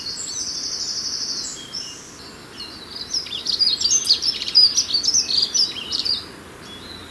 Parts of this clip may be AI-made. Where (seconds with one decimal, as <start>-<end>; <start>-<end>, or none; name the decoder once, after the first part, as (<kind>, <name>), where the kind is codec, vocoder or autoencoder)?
1.5-2.0 (vocoder, BigVGAN v2); 5.5-6.1

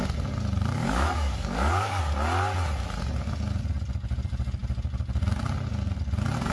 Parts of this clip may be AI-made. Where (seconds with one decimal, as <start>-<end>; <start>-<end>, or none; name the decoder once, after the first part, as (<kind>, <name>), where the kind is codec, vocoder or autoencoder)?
0.7-2.0 (codec, DAC)

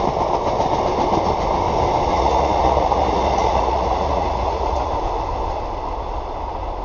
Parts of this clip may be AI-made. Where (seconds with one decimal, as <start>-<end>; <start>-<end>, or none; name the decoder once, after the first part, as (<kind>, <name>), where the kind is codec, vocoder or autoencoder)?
2.1-4.9 (vocoder, Vocos)